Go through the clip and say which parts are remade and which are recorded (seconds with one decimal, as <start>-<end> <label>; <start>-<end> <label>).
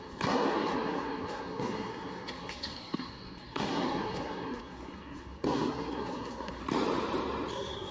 0.0-6.6 remade; 6.6-7.5 recorded; 7.5-7.9 remade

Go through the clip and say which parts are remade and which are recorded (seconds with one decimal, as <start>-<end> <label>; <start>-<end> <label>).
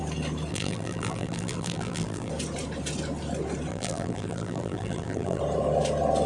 0.0-0.5 recorded; 0.5-2.3 remade; 2.3-3.7 recorded; 3.7-5.4 remade; 5.4-6.3 recorded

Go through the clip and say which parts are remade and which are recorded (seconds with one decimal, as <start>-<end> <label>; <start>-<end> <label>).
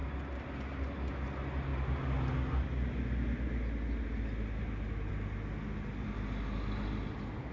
0.0-7.5 recorded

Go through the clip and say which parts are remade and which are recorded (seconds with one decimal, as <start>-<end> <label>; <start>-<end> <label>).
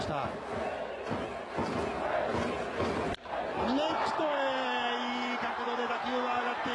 0.0-6.7 recorded